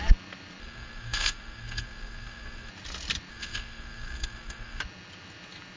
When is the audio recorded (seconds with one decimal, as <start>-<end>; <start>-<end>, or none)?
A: 0.0-0.6; 2.7-3.3; 4.8-5.8